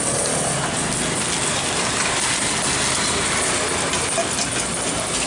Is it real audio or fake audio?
real